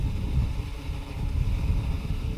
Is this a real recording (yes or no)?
no